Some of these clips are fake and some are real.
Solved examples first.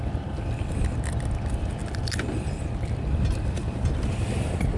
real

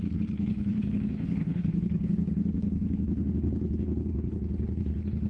fake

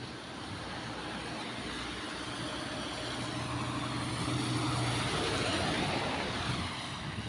real